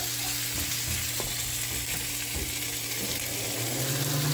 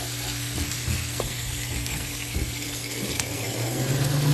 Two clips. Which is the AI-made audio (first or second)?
second